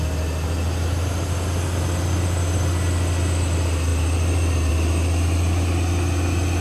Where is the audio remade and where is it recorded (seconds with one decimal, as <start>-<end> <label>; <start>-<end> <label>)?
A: 0.0-6.6 recorded